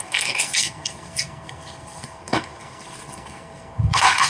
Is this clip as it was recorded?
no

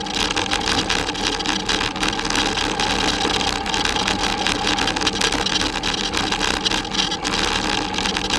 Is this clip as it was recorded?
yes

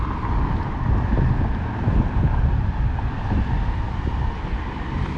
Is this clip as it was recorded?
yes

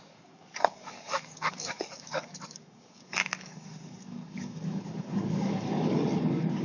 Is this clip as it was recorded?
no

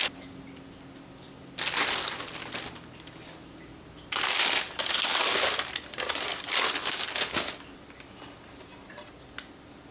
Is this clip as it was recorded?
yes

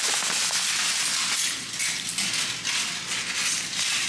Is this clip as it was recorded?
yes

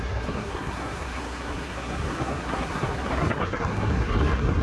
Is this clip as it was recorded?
no